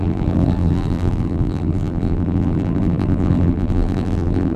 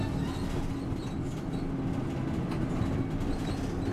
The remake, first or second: first